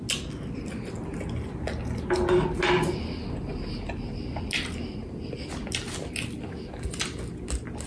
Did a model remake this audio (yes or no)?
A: no